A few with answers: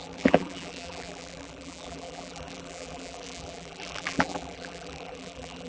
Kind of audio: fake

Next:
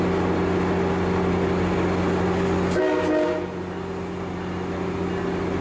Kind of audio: real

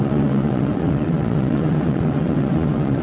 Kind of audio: fake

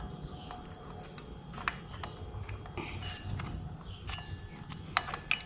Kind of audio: real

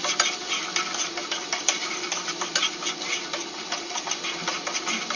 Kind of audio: real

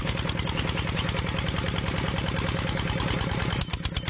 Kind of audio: real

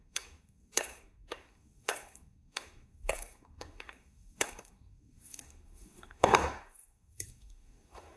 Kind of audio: fake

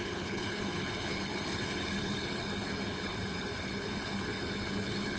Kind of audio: fake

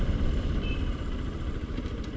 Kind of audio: real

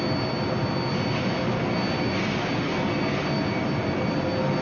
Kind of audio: real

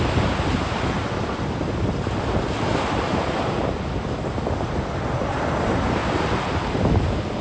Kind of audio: real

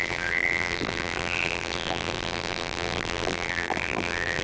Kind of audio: fake